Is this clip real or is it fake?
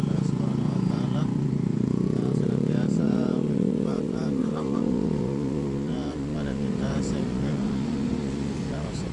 fake